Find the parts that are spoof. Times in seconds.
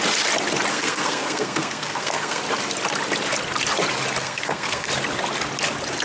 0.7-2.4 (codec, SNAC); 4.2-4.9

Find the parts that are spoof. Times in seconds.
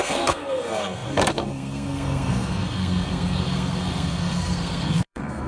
0.0-5.5 (codec, SNAC)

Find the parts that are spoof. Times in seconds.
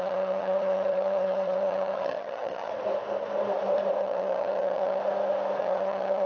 0.0-2.7 (vocoder, HiFi-GAN); 4.0-5.0; 5.6-6.3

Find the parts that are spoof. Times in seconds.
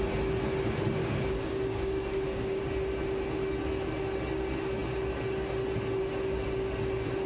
1.0-2.6 (codec, DAC)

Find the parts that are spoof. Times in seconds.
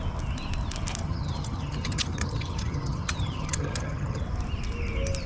1.0-4.2 (vocoder, HiFi-GAN)